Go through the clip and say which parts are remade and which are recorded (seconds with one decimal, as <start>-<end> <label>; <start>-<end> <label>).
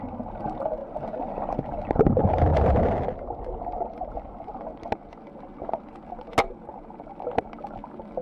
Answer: 0.0-8.2 recorded